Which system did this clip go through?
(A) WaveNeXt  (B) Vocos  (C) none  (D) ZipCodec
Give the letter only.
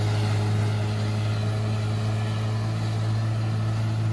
C